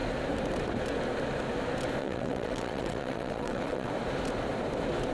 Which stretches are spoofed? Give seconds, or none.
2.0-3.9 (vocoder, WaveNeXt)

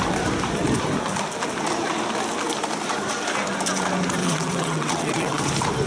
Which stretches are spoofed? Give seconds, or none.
4.2-5.4 (vocoder, WaveNeXt)